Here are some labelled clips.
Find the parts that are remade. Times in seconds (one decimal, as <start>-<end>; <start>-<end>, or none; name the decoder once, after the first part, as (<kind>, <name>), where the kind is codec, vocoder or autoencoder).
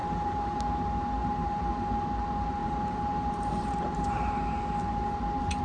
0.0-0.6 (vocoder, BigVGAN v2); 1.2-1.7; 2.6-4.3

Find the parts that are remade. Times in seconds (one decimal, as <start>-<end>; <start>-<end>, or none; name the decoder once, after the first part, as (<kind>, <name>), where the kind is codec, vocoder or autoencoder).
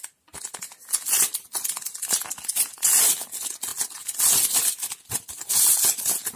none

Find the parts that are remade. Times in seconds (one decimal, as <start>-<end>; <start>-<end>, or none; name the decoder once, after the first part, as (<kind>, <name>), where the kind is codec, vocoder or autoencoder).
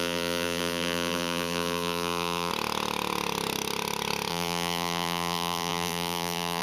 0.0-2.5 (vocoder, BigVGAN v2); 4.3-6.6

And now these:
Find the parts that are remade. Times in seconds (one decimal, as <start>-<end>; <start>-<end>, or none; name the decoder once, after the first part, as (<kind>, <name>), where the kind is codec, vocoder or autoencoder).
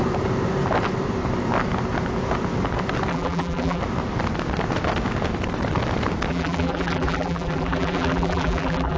3.1-3.8 (vocoder, BigVGAN v2); 6.3-9.0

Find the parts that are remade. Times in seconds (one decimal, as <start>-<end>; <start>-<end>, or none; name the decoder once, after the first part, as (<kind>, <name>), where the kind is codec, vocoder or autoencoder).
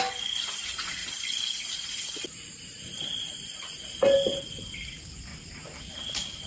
none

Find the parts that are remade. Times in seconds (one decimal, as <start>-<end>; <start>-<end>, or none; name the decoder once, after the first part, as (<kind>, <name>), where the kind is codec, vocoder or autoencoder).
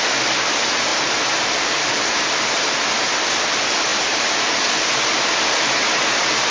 0.9-2.2 (vocoder, BigVGAN v2); 3.9-4.7